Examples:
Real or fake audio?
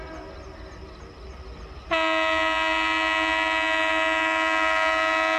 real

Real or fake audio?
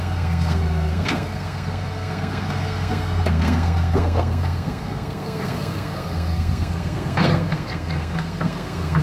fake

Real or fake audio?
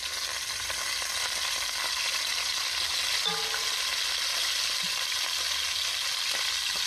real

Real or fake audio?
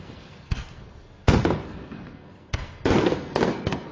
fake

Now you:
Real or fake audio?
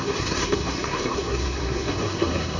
fake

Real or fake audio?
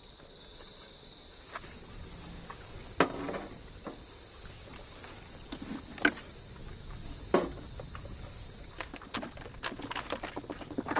real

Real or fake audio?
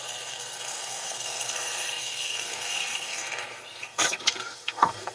fake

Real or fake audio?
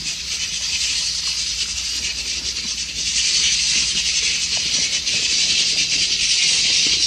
real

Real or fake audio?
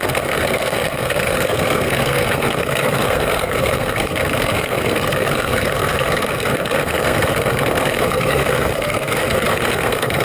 fake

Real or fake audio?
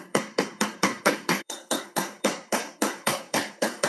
fake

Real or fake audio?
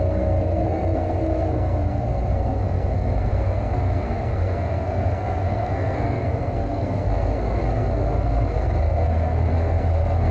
fake